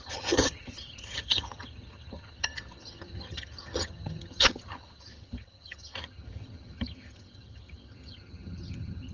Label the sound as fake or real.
fake